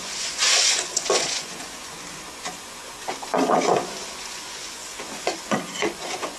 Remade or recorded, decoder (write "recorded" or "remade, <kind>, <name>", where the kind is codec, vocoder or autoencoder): remade, vocoder, Vocos